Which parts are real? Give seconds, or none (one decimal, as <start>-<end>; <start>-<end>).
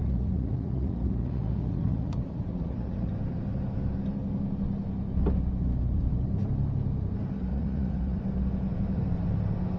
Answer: 3.1-7.5; 8.2-9.8